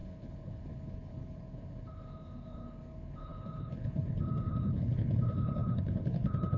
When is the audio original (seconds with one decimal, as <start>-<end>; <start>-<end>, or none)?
none